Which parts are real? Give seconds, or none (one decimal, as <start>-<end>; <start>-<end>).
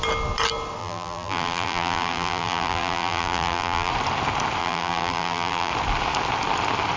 0.0-0.8; 3.9-4.6; 5.7-7.0